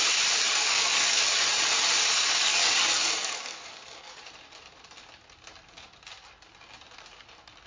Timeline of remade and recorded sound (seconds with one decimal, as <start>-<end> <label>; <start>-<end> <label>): 0.0-0.6 recorded; 0.6-1.2 remade; 1.2-2.4 recorded; 2.4-4.2 remade; 4.2-7.7 recorded